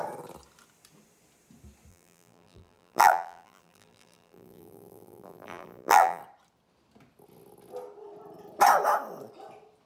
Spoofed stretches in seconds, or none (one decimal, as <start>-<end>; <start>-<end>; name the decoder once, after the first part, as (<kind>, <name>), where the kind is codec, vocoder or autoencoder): 1.9-6.2 (vocoder, BigVGAN v2)

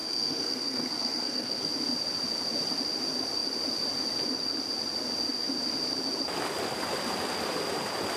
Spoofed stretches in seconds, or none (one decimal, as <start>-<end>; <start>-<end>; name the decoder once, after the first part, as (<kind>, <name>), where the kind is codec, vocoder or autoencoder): 0.0-1.7 (codec, SNAC)

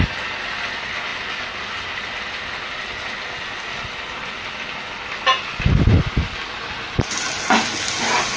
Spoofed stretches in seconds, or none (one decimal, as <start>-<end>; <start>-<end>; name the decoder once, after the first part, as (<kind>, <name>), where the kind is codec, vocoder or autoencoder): none

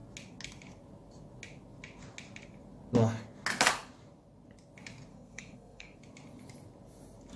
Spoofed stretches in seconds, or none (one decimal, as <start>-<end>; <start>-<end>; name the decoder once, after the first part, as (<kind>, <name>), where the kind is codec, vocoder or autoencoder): 5.1-6.0 (codec, SNAC)

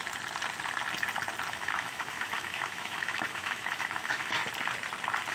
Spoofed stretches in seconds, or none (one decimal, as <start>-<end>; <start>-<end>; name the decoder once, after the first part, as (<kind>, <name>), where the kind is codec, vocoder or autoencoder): 1.5-4.4 (autoencoder, DAC-VAE)

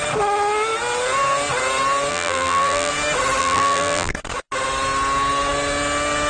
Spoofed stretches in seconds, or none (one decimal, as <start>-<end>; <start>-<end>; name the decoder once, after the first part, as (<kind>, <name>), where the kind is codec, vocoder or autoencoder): 2.1-2.9 (vocoder, BigVGAN v2); 3.4-4.1

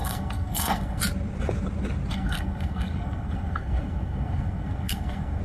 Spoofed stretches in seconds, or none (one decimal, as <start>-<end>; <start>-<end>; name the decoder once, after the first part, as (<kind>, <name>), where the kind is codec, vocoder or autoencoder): 0.0-1.0 (codec, SNAC); 2.1-5.4